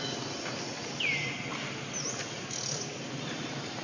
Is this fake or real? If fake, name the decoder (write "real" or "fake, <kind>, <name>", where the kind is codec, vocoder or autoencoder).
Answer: real